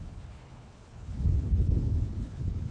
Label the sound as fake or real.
fake